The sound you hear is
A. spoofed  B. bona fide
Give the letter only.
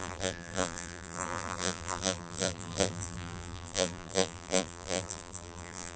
A